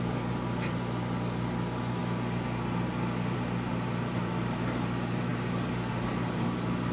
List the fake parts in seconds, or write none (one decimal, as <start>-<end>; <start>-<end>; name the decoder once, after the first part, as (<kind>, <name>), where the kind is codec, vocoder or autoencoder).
none